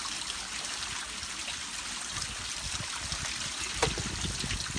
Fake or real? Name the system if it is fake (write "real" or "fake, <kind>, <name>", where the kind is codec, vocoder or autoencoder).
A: real